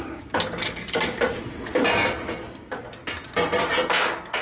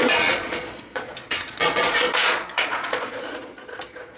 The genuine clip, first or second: first